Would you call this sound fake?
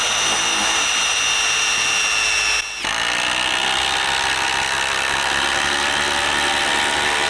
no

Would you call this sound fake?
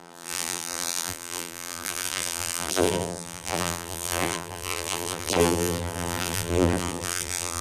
yes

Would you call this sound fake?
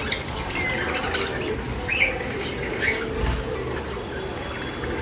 no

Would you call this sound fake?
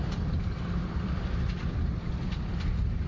yes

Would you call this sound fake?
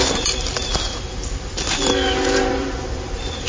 yes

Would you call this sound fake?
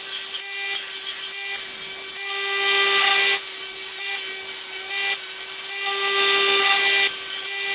no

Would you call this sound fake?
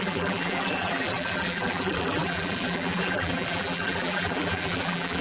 yes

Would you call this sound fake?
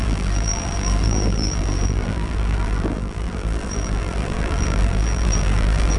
yes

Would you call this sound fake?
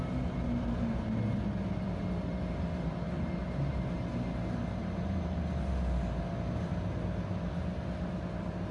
no